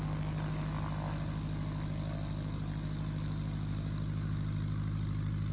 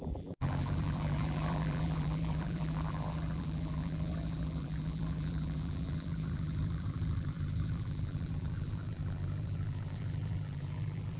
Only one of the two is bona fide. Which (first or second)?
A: first